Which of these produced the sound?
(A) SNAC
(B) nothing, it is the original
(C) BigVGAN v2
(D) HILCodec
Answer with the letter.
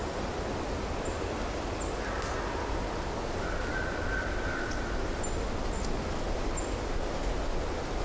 B